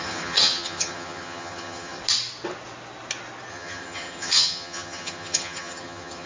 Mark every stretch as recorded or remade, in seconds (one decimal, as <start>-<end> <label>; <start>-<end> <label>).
0.0-2.0 remade; 2.0-3.5 recorded; 3.5-6.3 remade